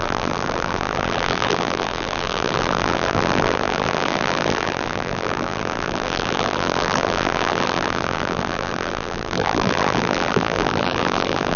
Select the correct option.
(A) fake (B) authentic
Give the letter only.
A